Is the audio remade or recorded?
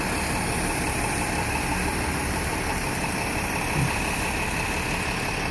remade